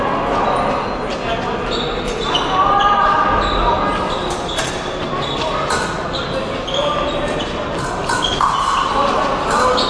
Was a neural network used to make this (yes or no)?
no